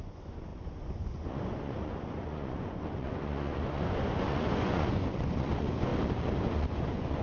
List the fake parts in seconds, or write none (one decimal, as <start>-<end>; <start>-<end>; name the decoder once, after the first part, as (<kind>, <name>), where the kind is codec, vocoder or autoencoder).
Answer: 0.0-5.9 (vocoder, Vocos); 6.4-7.2